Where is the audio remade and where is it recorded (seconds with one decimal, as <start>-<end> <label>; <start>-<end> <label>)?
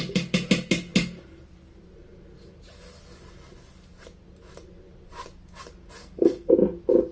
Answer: 0.0-6.0 recorded; 6.0-6.5 remade; 6.5-7.1 recorded